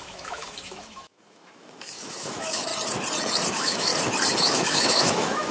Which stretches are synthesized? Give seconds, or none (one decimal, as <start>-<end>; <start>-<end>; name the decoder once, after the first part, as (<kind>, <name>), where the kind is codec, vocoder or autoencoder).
0.0-2.7 (autoencoder, DAC-VAE); 3.5-3.9; 4.4-5.5